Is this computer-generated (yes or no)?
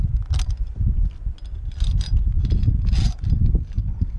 no